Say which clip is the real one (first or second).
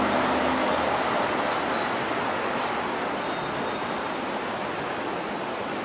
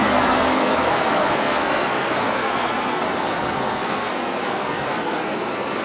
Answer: first